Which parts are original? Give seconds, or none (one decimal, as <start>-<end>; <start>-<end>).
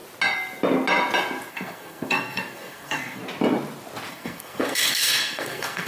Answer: 0.0-1.5; 3.2-4.1